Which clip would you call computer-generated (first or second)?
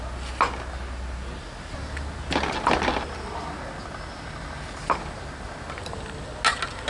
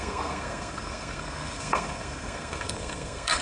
second